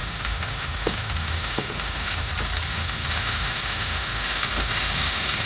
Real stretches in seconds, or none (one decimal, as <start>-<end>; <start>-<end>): 2.3-2.7